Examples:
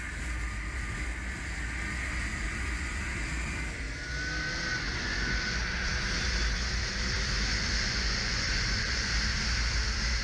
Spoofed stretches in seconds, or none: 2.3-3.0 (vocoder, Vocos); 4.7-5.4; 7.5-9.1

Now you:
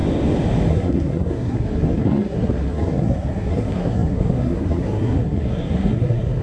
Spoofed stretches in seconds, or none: 0.7-6.4 (codec, SNAC)

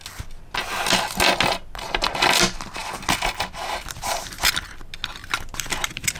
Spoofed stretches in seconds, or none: none

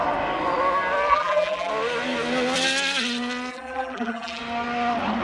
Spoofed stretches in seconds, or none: 1.1-1.7 (vocoder, BigVGAN v2); 3.5-4.4

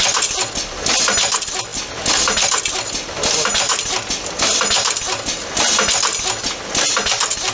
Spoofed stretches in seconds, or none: none

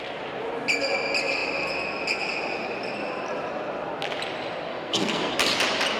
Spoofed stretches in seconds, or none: 4.7-5.3 (codec, SNAC)